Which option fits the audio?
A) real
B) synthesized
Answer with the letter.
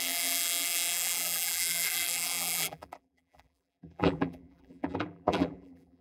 B